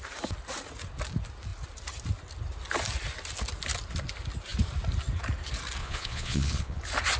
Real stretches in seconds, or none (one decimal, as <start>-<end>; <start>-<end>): 0.0-5.8; 6.8-7.2